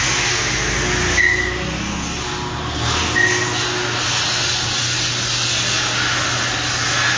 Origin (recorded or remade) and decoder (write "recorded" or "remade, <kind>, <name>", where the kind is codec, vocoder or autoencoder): recorded